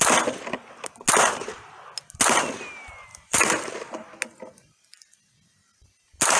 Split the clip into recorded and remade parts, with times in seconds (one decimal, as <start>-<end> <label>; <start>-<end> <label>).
0.0-3.1 recorded; 3.1-3.9 remade; 3.9-6.4 recorded